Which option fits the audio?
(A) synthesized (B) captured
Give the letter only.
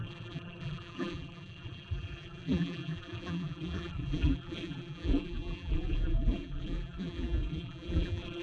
A